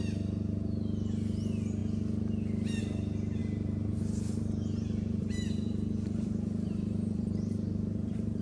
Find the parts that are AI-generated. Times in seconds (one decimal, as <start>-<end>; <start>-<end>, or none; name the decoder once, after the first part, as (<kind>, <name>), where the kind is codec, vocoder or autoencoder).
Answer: 3.4-8.4 (vocoder, BigVGAN v2)